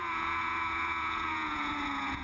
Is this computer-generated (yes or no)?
yes